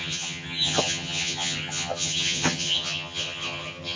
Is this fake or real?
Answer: fake